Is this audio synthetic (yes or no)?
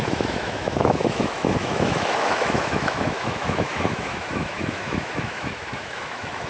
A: yes